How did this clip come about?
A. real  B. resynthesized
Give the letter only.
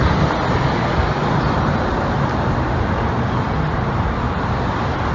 A